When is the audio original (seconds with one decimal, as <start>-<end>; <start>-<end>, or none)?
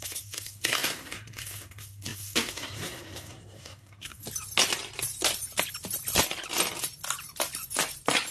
4.2-8.3